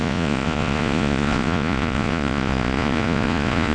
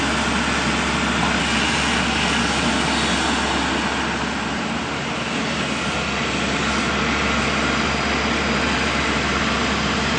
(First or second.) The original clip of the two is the second